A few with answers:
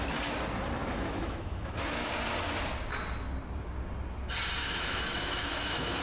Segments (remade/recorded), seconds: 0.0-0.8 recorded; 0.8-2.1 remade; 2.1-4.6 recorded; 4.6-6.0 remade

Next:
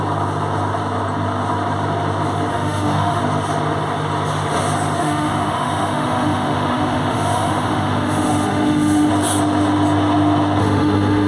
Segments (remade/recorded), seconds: 0.0-2.5 recorded; 2.5-3.2 remade; 3.2-5.0 recorded; 5.0-9.1 remade; 9.1-10.6 recorded; 10.6-11.3 remade

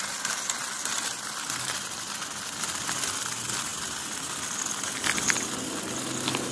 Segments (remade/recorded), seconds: 0.0-6.5 recorded

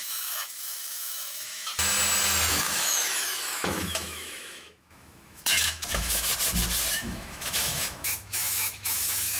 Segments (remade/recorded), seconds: 0.0-1.7 remade; 1.7-2.5 recorded; 2.5-6.3 remade; 6.3-6.9 recorded; 6.9-9.4 remade

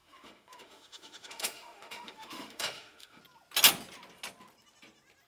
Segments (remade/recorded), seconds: 0.0-3.2 remade; 3.2-5.3 recorded

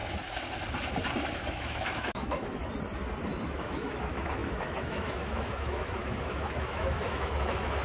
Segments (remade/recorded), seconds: 0.0-1.3 recorded; 1.3-2.6 remade; 2.6-3.2 recorded; 3.2-7.8 remade